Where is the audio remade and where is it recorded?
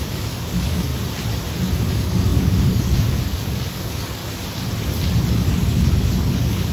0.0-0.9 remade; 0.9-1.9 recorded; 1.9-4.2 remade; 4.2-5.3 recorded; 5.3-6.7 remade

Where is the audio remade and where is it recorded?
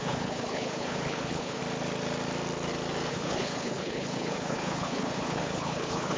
0.0-1.6 remade; 1.6-3.1 recorded; 3.1-6.2 remade